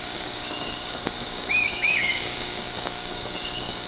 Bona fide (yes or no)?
no